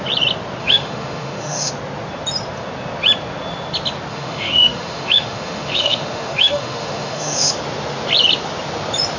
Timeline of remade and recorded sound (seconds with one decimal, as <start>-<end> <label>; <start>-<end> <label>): 0.0-0.6 recorded; 0.6-1.7 remade; 1.7-4.1 recorded; 4.1-7.5 remade; 7.5-9.2 recorded

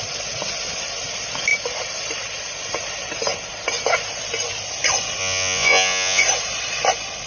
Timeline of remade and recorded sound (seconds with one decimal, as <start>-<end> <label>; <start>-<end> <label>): 0.0-5.2 recorded; 5.2-6.2 remade; 6.2-7.3 recorded